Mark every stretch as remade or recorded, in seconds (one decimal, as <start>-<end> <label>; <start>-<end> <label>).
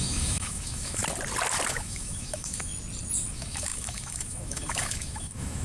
0.0-1.0 remade; 1.0-1.7 recorded; 1.7-2.7 remade; 2.7-3.3 recorded; 3.3-5.6 remade